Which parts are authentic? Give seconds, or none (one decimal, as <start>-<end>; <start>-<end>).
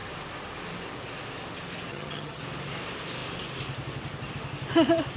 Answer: 0.0-1.9; 2.4-5.2